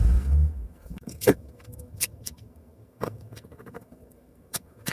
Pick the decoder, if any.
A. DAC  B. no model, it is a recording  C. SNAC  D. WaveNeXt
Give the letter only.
C